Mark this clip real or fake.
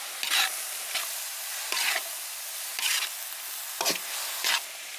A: real